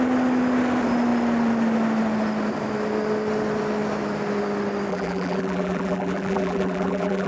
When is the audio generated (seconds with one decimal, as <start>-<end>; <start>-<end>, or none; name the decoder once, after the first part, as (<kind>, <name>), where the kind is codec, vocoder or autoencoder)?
4.9-7.3 (vocoder, BigVGAN v2)